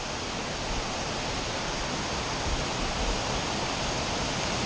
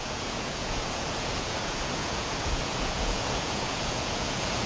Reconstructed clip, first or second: second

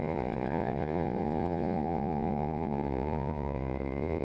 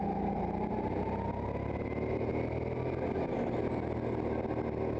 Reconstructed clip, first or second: first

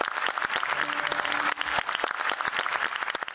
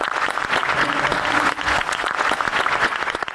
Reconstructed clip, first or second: second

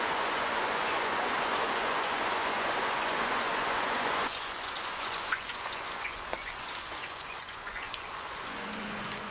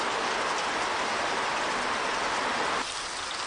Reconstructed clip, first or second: first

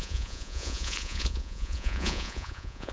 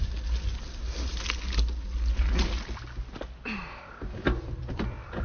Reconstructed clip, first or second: first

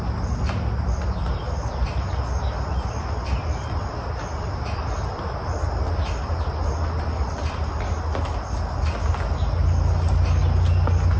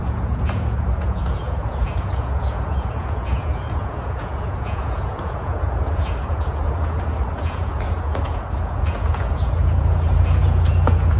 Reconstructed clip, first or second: second